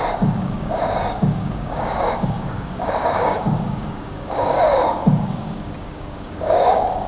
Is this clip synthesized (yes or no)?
yes